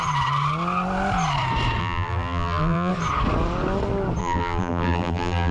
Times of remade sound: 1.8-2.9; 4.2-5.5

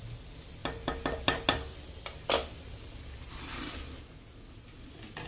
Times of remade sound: none

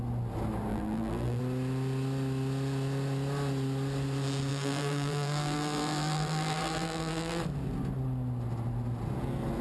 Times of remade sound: 0.7-1.4; 4.5-7.4